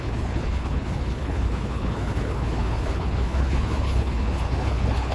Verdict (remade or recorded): remade